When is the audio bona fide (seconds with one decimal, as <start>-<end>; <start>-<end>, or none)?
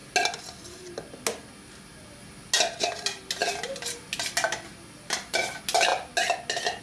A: 0.0-6.8